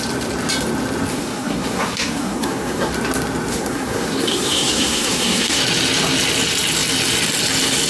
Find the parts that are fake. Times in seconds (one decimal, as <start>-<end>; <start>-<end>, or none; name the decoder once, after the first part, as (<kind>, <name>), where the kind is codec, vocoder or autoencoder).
1.1-2.9 (codec, SNAC); 3.5-5.6